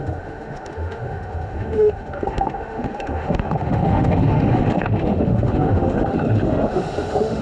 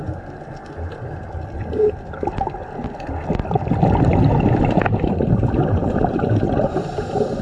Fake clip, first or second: first